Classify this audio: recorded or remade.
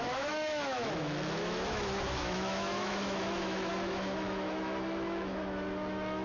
remade